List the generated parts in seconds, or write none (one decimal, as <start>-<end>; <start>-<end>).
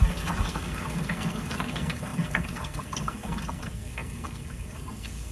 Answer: 0.0-5.3